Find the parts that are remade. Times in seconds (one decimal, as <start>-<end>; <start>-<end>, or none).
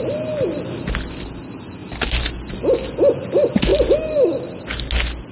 none